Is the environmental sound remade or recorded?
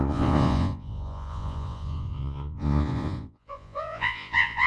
remade